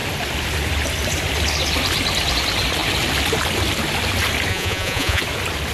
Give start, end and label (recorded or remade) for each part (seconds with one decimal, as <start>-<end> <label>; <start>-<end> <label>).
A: 0.0-4.5 recorded; 4.5-5.2 remade; 5.2-5.7 recorded